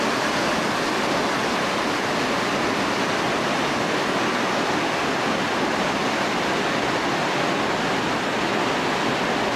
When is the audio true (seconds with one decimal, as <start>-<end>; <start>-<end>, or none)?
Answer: 0.0-9.6

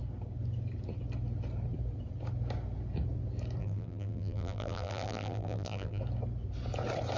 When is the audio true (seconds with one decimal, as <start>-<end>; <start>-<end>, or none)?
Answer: 0.0-3.6; 6.0-7.2

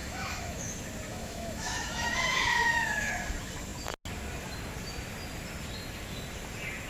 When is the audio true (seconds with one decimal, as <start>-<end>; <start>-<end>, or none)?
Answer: 0.7-1.1; 3.1-6.9

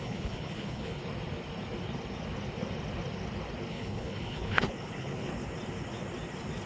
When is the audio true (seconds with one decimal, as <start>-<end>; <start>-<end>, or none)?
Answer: 1.0-3.7; 5.3-6.7

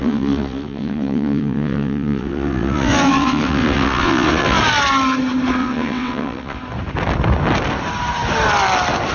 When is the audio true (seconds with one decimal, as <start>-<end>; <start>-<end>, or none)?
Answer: 4.6-5.6; 6.6-9.1